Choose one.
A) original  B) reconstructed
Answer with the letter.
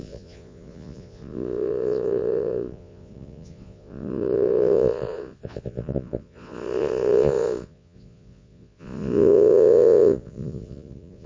B